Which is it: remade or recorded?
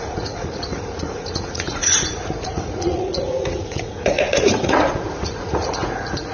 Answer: remade